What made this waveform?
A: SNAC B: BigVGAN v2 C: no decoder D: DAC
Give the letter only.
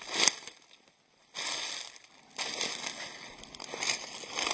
C